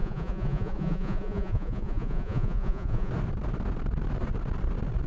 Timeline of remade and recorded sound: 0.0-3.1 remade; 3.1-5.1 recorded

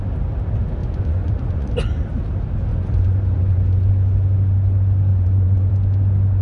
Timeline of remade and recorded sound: 0.0-0.8 recorded; 0.8-1.7 remade; 1.7-2.7 recorded; 2.7-3.9 remade; 3.9-5.1 recorded; 5.1-5.7 remade; 5.7-6.4 recorded

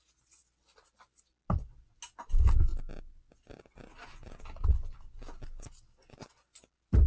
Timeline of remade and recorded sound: 0.0-7.1 recorded